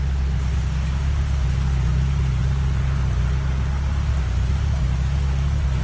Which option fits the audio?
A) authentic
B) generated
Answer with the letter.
A